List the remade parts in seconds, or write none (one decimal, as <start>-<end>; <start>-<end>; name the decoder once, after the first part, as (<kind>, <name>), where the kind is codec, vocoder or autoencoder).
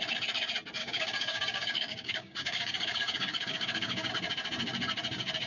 0.8-4.1 (codec, DAC)